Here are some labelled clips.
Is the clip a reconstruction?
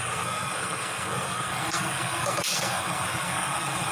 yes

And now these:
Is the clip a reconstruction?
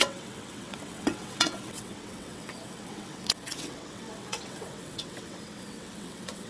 yes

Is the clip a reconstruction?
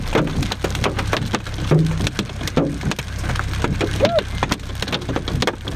no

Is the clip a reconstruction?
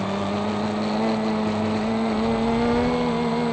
no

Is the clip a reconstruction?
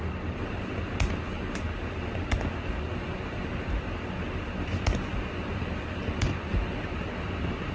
no